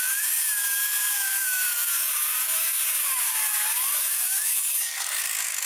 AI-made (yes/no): yes